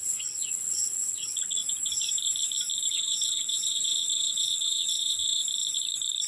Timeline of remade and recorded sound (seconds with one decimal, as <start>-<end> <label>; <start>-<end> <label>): 0.0-1.6 remade; 1.6-2.9 recorded; 2.9-5.4 remade; 5.4-6.3 recorded